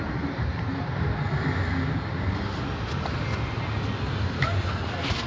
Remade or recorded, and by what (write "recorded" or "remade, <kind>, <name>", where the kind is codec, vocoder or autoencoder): recorded